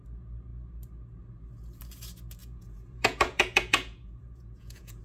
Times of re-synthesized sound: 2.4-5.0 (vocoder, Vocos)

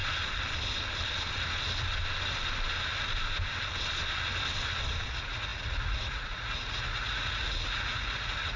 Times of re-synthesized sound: 5.1-8.6 (vocoder, Vocos)

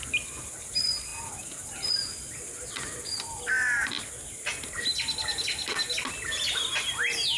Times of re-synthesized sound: none

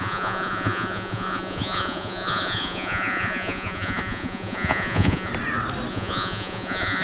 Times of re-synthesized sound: 0.0-5.3 (vocoder, Vocos); 5.9-7.0

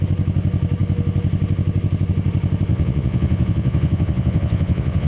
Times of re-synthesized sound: 2.7-5.1 (vocoder, Vocos)

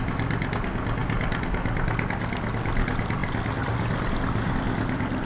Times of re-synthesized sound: none